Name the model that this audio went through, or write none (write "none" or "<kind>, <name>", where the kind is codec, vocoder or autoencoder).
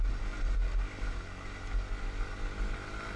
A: none